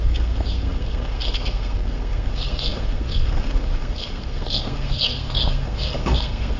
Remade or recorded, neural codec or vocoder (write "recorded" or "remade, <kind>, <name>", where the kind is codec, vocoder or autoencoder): remade, codec, SNAC